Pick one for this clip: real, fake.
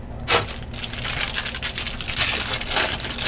real